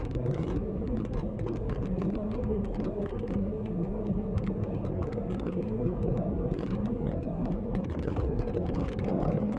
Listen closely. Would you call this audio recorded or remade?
remade